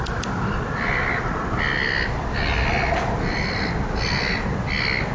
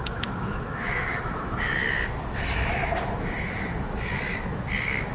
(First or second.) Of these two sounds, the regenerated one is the second